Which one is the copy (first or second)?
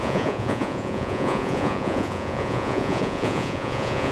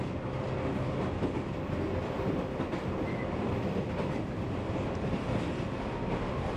first